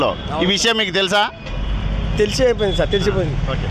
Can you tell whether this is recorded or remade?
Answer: recorded